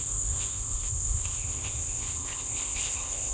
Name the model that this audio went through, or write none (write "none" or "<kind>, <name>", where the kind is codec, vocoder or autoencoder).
codec, ZipCodec